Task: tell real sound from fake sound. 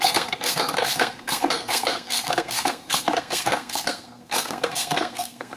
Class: fake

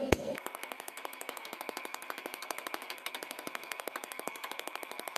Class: fake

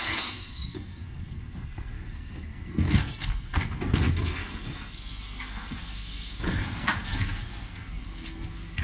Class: fake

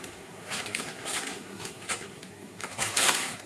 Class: fake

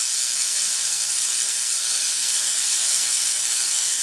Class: fake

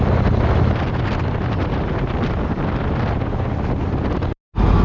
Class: real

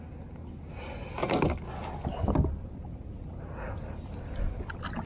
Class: real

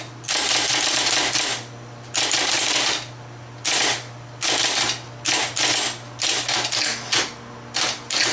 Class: real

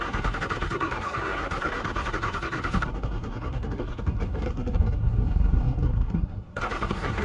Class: fake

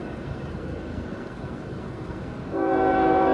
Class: fake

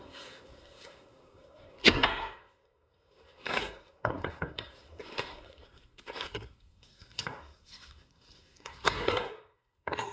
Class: fake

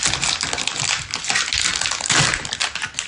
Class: real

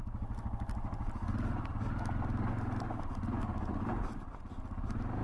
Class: real